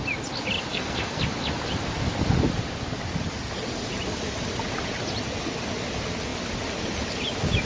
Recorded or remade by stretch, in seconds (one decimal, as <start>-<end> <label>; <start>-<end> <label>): 0.0-0.7 recorded; 0.7-1.2 remade; 1.2-7.7 recorded